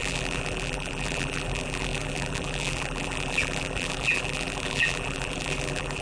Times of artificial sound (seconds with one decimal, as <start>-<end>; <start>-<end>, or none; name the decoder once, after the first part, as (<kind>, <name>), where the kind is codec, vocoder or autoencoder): 0.0-6.0 (vocoder, BigVGAN v2)